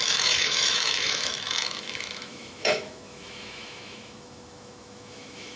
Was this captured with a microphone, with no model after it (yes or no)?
no